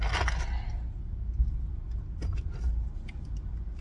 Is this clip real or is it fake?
real